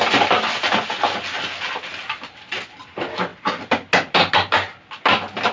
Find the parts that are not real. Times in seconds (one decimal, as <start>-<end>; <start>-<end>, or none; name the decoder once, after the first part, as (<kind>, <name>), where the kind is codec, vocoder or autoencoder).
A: none